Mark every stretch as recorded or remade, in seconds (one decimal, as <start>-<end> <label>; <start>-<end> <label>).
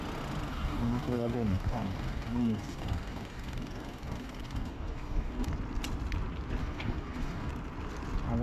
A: 0.0-0.5 recorded; 0.5-5.5 remade; 5.5-6.6 recorded; 6.6-7.5 remade; 7.5-8.4 recorded